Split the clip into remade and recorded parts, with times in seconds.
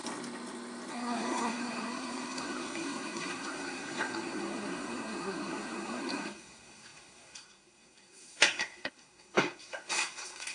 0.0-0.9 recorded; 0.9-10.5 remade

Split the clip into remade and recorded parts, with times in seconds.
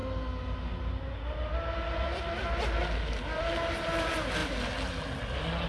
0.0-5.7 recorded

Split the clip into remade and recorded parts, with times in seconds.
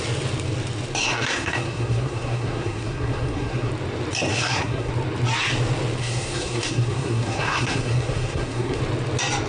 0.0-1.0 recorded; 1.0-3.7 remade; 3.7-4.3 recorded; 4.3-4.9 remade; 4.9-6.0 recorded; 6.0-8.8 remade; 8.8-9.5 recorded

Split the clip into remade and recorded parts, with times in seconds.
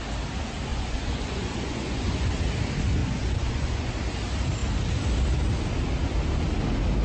0.0-0.7 recorded; 0.7-2.3 remade; 2.3-3.0 recorded; 3.0-3.9 remade; 3.9-7.0 recorded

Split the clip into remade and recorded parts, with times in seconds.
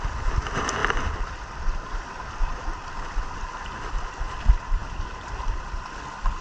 0.0-6.4 recorded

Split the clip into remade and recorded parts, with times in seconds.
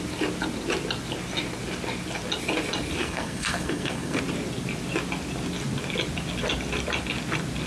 0.0-3.0 recorded; 3.0-4.2 remade; 4.2-7.7 recorded